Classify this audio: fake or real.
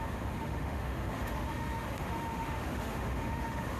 fake